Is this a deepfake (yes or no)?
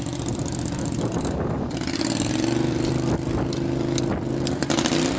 yes